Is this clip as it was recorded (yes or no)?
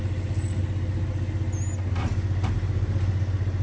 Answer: yes